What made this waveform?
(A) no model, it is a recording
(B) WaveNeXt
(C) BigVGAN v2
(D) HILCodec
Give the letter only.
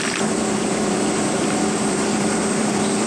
C